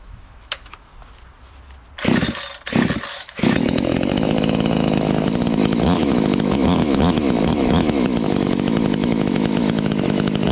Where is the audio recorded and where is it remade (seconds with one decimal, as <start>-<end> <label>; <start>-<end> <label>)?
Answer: 0.0-0.9 remade; 0.9-3.1 recorded; 3.1-10.5 remade